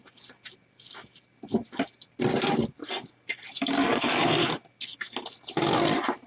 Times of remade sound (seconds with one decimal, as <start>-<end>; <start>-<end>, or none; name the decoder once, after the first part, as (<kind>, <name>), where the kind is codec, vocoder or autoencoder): none